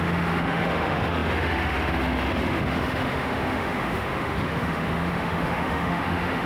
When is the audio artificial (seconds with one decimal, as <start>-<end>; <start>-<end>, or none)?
0.0-6.5

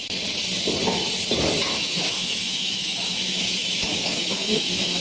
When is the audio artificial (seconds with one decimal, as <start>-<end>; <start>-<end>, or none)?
1.8-5.0

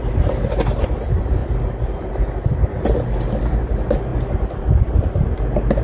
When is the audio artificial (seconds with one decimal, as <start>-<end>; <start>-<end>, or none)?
none

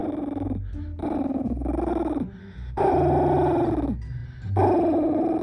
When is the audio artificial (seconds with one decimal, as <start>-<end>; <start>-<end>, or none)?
2.4-2.9

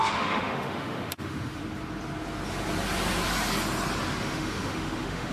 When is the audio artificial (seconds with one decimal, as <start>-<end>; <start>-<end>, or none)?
0.0-1.6; 4.2-5.3